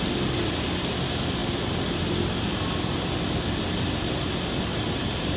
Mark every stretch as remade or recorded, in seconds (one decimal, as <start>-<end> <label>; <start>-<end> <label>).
0.0-5.4 recorded